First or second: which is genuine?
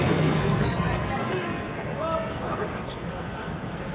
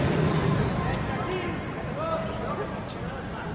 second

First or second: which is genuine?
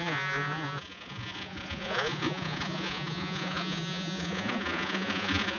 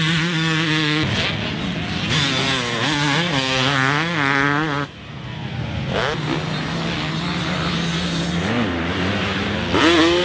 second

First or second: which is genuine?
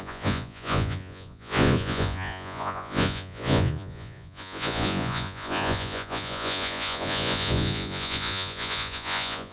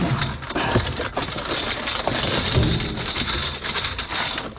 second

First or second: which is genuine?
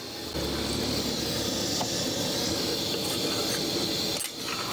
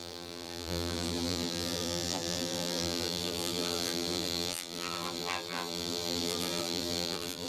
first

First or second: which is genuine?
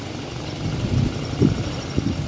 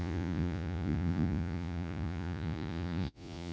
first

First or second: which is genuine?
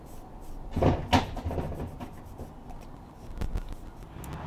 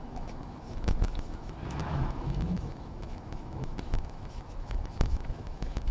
first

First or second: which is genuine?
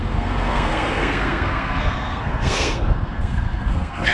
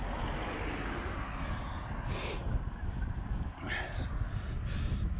second